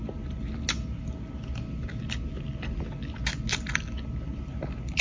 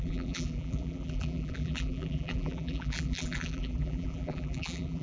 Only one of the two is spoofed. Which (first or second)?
second